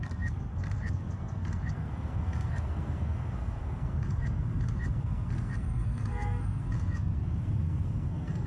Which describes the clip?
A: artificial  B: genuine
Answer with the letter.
A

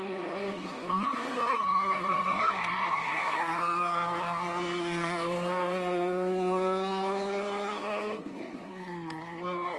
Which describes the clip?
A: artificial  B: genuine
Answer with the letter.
A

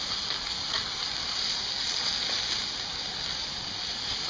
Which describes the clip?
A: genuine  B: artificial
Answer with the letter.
A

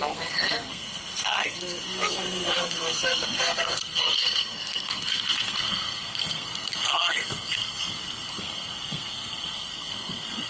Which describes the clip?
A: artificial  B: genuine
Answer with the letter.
A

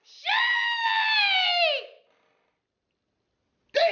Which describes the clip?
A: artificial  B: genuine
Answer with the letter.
B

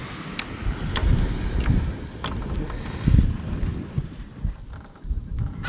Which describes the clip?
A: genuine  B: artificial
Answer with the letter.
A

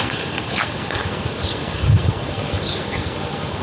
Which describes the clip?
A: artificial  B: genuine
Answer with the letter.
A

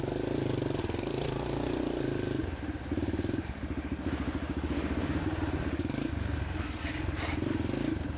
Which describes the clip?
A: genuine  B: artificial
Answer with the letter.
A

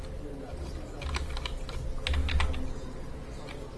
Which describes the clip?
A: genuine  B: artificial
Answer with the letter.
A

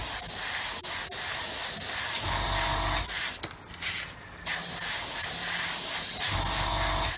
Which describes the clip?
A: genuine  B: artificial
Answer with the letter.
A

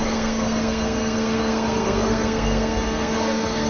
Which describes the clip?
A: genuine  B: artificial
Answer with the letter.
B